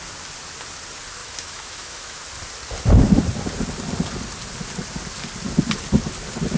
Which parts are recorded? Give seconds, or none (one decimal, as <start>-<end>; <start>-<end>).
0.0-1.2; 2.2-6.6